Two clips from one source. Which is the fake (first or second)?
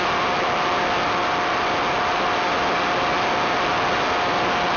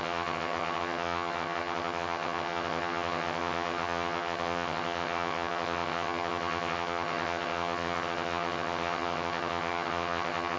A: second